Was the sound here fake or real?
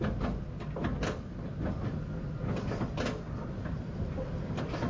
real